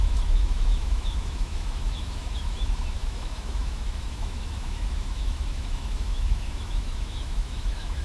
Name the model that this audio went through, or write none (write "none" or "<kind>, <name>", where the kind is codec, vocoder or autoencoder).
autoencoder, DAC-VAE